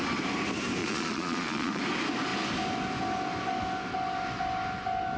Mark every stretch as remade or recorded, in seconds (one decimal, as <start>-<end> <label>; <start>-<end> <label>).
0.0-0.8 recorded; 0.8-1.8 remade; 1.8-5.2 recorded